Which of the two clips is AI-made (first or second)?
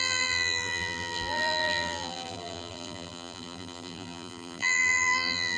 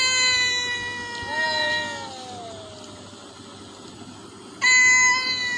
first